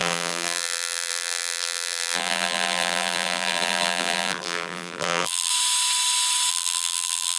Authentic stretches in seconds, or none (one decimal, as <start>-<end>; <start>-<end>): 5.5-6.5